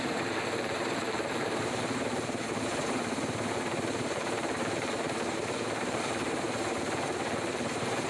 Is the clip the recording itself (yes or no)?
no